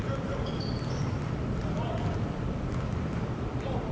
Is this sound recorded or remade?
remade